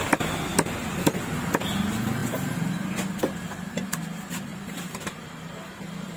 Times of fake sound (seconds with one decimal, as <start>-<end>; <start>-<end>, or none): 4.5-5.6

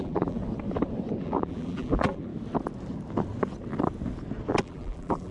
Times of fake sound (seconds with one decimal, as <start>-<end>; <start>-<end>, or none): 0.0-0.4; 1.2-2.3; 4.6-5.3

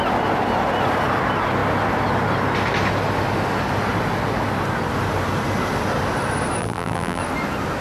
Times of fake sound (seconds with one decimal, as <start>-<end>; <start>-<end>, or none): 6.6-7.2

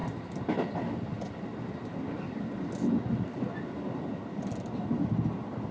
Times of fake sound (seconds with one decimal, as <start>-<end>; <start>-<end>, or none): none

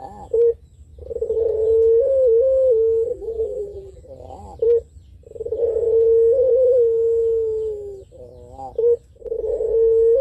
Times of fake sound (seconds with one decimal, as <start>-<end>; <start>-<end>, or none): 3.1-4.0

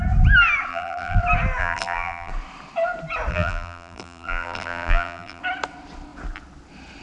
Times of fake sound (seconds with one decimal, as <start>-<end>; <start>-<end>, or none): 0.7-1.2; 1.6-2.3; 3.3-5.4